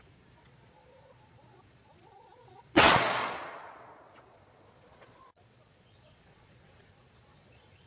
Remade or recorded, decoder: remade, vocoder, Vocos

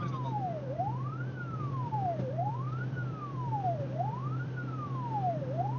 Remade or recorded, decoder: recorded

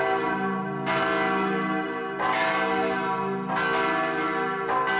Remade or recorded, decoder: recorded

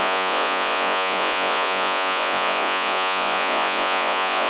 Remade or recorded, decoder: remade, vocoder, Vocos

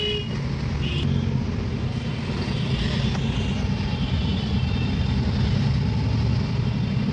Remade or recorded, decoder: recorded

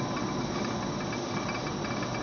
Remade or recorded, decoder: recorded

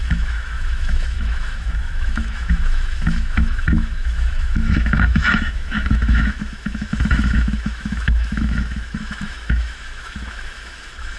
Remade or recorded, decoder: remade, autoencoder, DAC-VAE